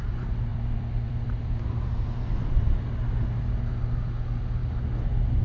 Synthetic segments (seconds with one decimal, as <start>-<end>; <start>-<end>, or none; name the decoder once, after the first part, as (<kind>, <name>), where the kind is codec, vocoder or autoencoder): 0.5-3.7 (vocoder, BigVGAN v2)